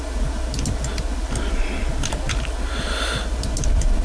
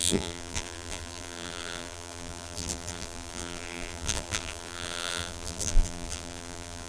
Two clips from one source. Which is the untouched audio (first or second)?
first